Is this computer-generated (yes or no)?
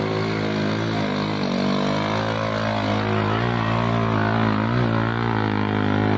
no